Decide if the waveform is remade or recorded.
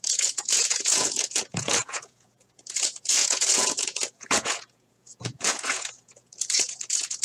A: remade